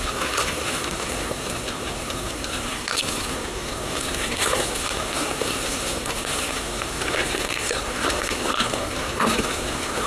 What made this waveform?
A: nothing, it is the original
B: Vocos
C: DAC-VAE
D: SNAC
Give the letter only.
D